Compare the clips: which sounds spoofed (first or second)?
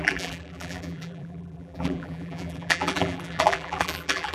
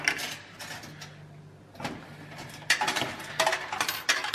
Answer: first